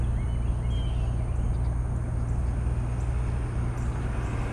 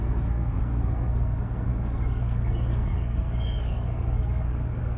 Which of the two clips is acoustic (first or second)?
first